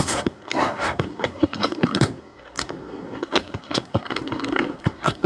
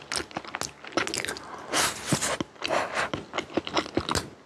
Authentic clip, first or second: second